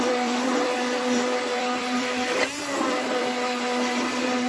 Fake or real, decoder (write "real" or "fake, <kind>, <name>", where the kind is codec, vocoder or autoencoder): fake, vocoder, BigVGAN v2